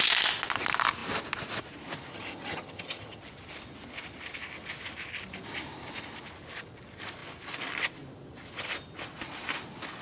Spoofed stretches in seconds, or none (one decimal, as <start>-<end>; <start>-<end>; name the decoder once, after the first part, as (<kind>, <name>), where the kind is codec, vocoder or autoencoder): 2.1-3.2 (vocoder, HiFi-GAN)